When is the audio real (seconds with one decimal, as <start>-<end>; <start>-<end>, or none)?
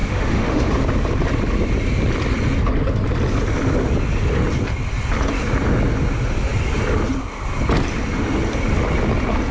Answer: 0.7-9.5